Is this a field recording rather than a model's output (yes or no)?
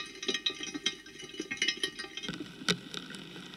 yes